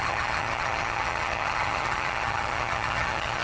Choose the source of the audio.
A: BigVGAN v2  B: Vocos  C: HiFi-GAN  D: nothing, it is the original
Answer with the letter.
C